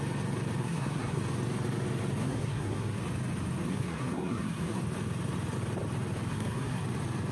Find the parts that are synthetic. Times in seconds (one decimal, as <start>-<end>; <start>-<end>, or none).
0.6-1.2; 2.2-3.0; 3.7-4.8; 6.3-6.8